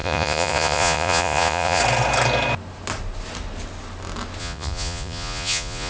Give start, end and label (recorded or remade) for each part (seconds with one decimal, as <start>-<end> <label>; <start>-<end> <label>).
0.0-1.8 remade; 1.8-4.4 recorded; 4.4-5.9 remade